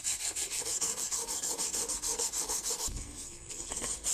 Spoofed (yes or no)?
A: yes